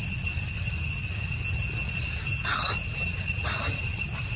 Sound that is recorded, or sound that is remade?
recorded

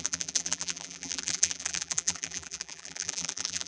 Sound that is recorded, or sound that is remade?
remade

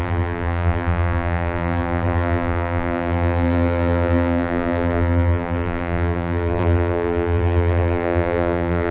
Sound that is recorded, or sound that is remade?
remade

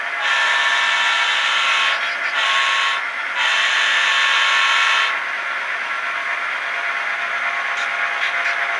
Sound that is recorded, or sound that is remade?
recorded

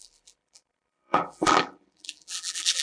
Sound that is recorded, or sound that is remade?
remade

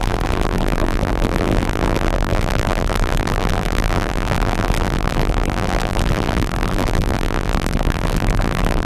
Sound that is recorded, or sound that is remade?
remade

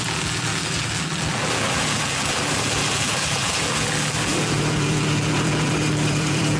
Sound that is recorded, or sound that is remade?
remade